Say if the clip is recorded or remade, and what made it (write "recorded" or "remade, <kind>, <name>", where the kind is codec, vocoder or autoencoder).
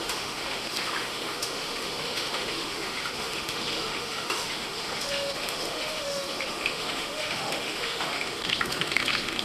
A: remade, autoencoder, DAC-VAE